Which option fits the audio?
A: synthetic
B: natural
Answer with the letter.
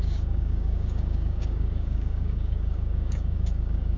A